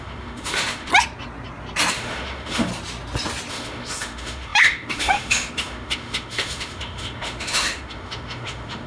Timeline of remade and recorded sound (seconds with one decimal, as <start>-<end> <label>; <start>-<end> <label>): 0.0-0.9 remade; 0.9-1.9 recorded; 1.9-2.7 remade; 2.7-3.5 recorded; 3.5-8.9 remade